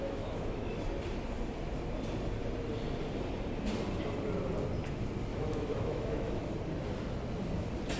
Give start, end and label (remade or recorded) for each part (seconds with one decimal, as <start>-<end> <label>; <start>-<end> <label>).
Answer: 0.0-0.7 remade; 0.7-5.3 recorded; 5.3-6.4 remade; 6.4-8.0 recorded